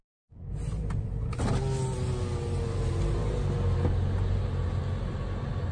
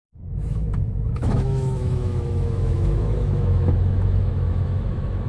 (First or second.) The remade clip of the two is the second